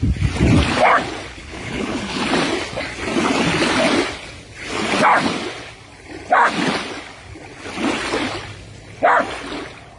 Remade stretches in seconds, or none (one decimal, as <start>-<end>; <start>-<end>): 1.4-2.2